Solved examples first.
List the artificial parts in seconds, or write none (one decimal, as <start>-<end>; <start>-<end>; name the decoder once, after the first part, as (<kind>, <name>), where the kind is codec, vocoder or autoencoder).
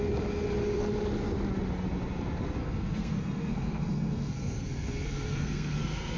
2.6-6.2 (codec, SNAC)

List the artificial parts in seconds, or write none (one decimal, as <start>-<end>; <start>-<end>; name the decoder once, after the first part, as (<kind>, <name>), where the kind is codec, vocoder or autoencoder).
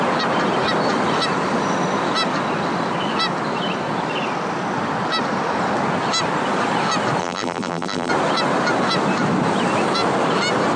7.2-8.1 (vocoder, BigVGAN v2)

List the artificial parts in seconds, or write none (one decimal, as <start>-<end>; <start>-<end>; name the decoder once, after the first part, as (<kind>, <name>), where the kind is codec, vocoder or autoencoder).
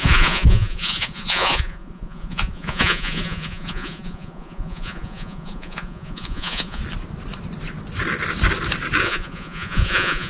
0.0-6.8 (vocoder, Vocos); 9.0-10.3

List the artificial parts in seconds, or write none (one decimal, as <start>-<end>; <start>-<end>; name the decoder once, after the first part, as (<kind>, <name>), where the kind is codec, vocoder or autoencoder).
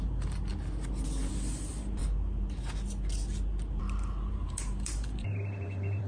0.0-0.5 (vocoder, BigVGAN v2); 1.3-2.0; 4.3-6.1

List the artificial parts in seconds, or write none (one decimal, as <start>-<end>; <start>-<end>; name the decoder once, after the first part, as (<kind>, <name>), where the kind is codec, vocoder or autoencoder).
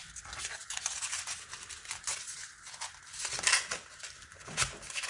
none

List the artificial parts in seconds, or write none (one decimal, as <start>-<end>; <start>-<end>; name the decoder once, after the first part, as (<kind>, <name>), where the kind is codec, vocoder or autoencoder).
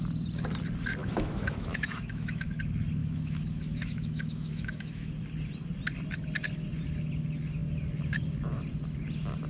1.0-2.6 (autoencoder, DAC-VAE); 3.0-5.1